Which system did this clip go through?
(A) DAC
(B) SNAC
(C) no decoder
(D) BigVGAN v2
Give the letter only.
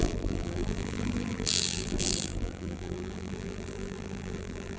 D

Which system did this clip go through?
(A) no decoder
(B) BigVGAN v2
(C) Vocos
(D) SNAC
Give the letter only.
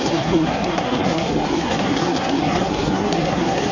D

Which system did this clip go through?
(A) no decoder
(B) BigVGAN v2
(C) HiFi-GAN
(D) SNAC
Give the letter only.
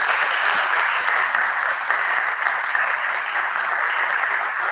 A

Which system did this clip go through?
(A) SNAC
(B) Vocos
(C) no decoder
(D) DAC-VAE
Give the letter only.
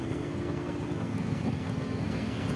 A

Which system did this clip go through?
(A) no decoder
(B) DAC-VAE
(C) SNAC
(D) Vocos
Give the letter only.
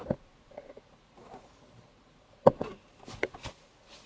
D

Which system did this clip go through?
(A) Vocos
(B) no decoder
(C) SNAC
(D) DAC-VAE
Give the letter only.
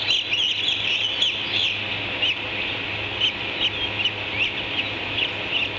B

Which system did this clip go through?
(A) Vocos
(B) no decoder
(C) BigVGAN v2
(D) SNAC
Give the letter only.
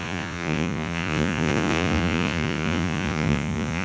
A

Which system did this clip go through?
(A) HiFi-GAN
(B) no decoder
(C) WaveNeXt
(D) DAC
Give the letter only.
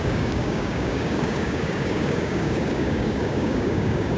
D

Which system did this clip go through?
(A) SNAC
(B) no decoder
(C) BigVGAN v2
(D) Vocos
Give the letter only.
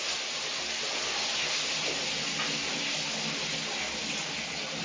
B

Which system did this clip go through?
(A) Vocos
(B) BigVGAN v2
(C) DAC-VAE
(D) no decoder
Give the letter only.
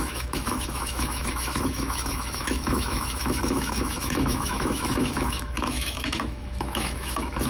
C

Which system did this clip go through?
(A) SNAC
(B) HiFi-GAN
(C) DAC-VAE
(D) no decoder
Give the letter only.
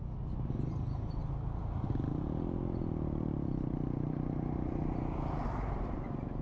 D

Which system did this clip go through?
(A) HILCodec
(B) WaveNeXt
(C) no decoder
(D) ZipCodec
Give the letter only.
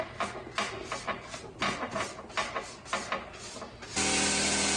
C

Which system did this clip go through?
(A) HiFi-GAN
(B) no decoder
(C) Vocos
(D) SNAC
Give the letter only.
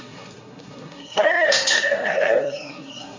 D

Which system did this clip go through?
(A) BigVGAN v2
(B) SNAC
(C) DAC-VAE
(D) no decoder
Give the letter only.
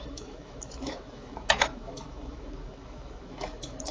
C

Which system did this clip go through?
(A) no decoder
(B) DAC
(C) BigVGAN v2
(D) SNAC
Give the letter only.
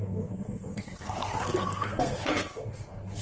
D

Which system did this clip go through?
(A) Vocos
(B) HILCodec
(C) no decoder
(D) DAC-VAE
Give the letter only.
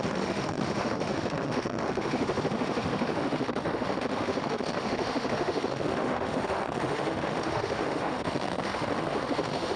D